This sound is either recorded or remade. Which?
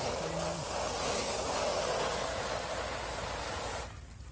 recorded